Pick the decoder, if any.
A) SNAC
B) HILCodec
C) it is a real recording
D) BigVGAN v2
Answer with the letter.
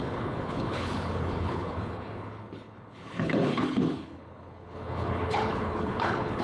B